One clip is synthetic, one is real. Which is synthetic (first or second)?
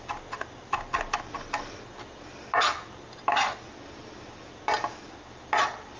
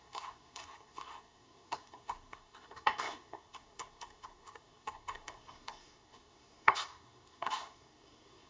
second